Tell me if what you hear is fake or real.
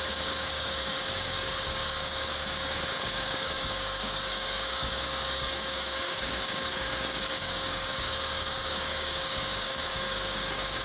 fake